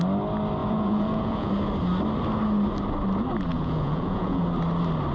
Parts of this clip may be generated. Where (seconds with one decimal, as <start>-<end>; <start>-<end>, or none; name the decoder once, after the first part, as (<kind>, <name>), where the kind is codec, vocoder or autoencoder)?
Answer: 0.6-1.5 (vocoder, Vocos); 3.5-4.4